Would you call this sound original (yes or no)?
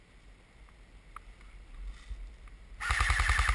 yes